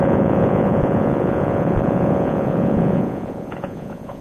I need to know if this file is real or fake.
fake